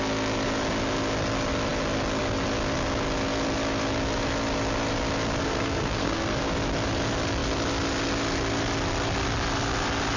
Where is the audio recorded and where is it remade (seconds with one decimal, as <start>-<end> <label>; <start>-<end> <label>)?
0.0-5.4 recorded; 5.4-6.4 remade; 6.4-10.2 recorded

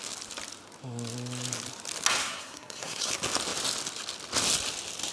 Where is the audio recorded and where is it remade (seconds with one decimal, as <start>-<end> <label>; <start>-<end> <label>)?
0.0-2.2 recorded; 2.2-3.1 remade; 3.1-5.1 recorded

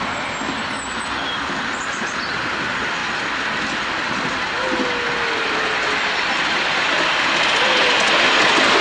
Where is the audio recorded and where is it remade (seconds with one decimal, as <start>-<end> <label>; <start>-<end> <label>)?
0.0-8.8 recorded

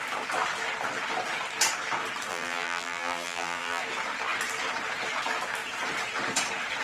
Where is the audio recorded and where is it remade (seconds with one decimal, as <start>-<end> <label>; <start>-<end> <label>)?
0.0-2.3 recorded; 2.3-3.8 remade; 3.8-6.8 recorded

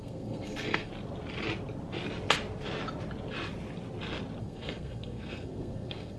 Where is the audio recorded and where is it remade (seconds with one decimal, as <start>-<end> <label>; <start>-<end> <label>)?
0.0-0.9 remade; 0.9-4.4 recorded; 4.4-6.2 remade